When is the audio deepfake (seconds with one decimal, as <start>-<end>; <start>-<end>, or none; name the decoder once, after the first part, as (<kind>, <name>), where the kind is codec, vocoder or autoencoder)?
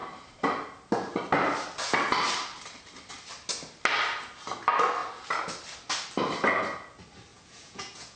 7.3-8.2 (vocoder, Vocos)